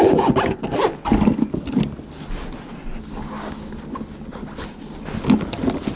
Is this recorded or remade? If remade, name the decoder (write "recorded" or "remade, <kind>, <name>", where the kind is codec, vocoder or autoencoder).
recorded